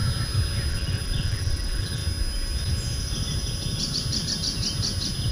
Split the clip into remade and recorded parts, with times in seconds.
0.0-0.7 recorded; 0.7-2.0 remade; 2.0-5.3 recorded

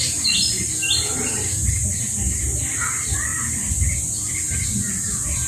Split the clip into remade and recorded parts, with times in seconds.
0.0-1.8 remade; 1.8-2.4 recorded; 2.4-3.3 remade; 3.3-3.8 recorded; 3.8-5.5 remade

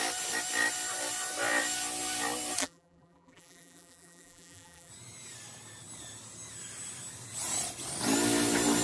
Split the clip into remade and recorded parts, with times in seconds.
0.0-2.6 recorded; 2.6-4.9 remade; 4.9-8.8 recorded

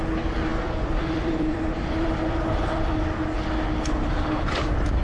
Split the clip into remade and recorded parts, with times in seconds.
0.0-0.5 recorded; 0.5-3.0 remade; 3.0-5.0 recorded

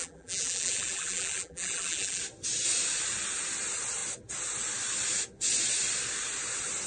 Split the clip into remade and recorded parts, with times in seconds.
0.0-2.2 remade; 2.2-6.9 recorded